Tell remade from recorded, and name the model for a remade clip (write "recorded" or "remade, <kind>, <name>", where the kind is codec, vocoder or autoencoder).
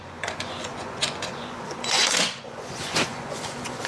remade, vocoder, Vocos